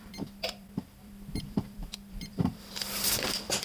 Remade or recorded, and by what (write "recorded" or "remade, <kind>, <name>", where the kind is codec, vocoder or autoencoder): remade, vocoder, BigVGAN v2